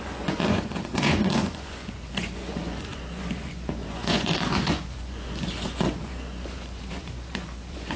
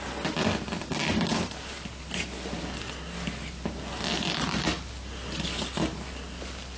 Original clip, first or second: second